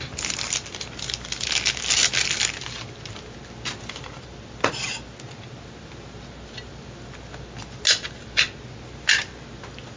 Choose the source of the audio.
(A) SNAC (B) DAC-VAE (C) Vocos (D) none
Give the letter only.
D